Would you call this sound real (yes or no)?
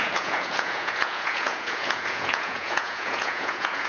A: no